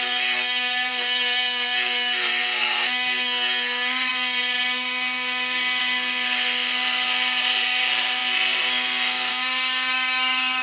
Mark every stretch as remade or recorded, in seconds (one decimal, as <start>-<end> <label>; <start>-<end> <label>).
0.0-10.6 remade